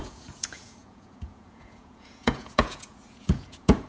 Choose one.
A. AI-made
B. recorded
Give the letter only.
A